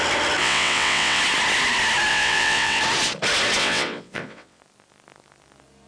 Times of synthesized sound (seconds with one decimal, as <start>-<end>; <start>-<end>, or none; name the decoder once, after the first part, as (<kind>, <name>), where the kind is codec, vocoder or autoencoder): 0.4-1.2 (vocoder, WaveNeXt); 2.1-2.8; 3.6-4.6